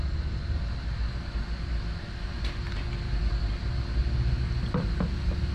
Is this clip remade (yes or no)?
no